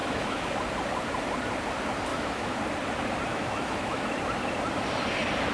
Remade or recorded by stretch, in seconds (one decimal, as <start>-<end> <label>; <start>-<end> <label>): 0.0-0.5 remade; 0.5-2.1 recorded; 2.1-2.6 remade; 2.6-3.3 recorded; 3.3-4.1 remade; 4.1-5.5 recorded